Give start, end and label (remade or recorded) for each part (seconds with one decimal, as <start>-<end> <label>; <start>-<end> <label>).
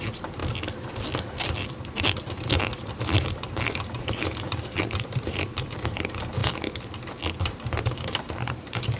0.0-0.4 remade; 0.4-2.3 recorded; 2.3-6.4 remade; 6.4-7.4 recorded; 7.4-9.0 remade